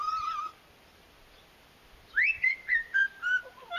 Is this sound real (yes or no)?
yes